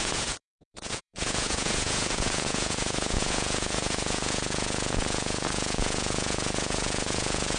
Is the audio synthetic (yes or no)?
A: yes